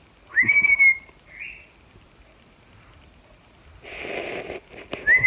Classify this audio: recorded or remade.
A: recorded